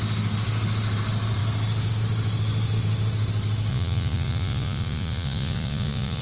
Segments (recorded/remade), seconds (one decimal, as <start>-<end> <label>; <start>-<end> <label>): 0.0-3.7 recorded; 3.7-6.2 remade